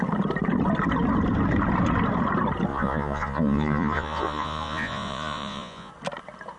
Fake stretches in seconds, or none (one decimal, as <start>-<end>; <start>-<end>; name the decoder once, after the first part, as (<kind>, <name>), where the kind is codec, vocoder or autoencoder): 2.7-5.9 (vocoder, Vocos)